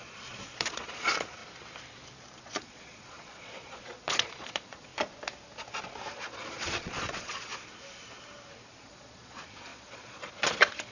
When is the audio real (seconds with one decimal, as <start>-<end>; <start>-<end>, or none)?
1.4-2.4; 4.9-6.1; 7.5-8.8